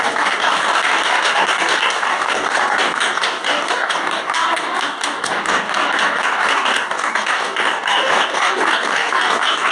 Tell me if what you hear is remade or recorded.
remade